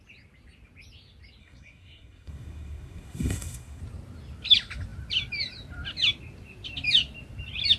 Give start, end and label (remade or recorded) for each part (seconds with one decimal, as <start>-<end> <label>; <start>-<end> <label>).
0.0-1.4 recorded; 1.4-3.8 remade; 3.8-7.8 recorded